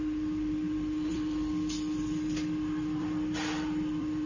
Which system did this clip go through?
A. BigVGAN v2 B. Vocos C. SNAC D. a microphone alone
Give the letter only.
A